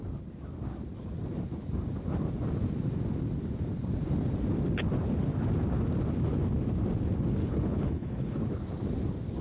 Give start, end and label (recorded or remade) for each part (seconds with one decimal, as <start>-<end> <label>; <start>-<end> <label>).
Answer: 0.0-7.4 recorded; 7.4-8.4 remade; 8.4-9.4 recorded